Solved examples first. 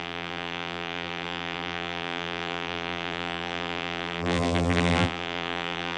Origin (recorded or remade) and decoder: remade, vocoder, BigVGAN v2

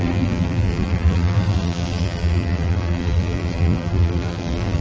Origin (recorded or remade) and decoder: remade, vocoder, BigVGAN v2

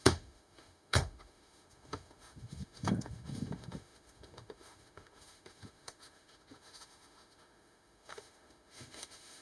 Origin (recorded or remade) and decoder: remade, autoencoder, DAC-VAE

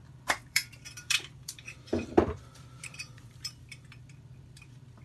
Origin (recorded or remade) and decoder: remade, vocoder, BigVGAN v2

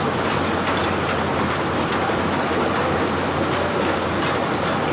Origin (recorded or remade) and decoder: recorded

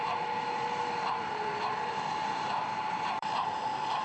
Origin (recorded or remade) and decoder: remade, vocoder, BigVGAN v2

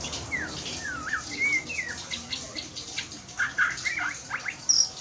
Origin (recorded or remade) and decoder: recorded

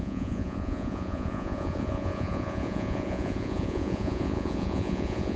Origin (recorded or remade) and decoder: remade, vocoder, Vocos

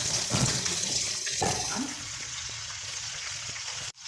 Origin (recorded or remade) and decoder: remade, vocoder, Vocos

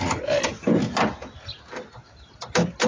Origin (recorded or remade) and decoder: recorded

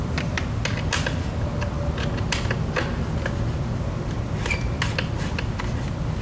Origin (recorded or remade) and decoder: recorded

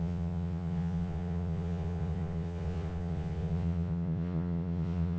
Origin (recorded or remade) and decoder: remade, vocoder, Vocos